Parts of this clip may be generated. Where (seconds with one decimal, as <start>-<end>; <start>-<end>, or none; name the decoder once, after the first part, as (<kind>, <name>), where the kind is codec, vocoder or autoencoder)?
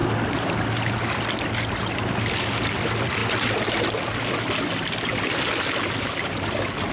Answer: 1.7-3.2 (vocoder, BigVGAN v2)